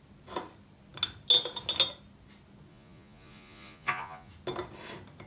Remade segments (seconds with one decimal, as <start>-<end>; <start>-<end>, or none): 2.7-4.3